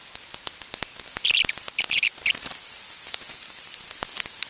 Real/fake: real